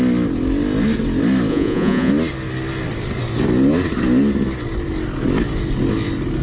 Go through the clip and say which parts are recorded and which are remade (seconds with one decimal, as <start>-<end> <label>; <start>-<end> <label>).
0.0-1.5 recorded; 1.5-2.1 remade; 2.1-6.4 recorded